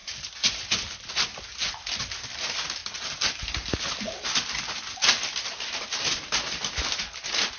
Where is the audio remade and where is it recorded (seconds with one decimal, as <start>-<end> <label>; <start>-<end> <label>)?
0.0-7.6 recorded